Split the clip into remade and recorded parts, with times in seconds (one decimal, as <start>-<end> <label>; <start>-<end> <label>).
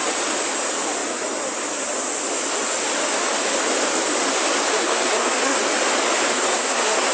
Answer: 0.0-4.7 recorded; 4.7-5.6 remade; 5.6-6.3 recorded; 6.3-7.1 remade